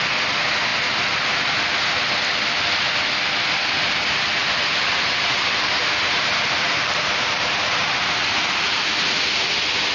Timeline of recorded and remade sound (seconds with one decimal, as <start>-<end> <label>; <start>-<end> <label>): 0.0-4.4 recorded; 4.4-9.4 remade; 9.4-9.9 recorded